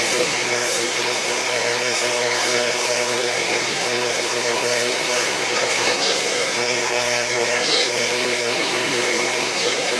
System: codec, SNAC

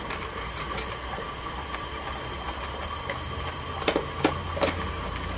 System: none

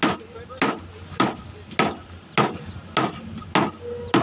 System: none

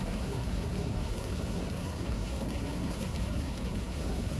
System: codec, SNAC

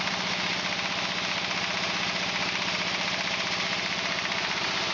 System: none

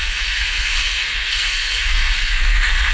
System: codec, SNAC